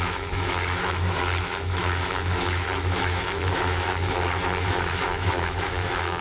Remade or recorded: remade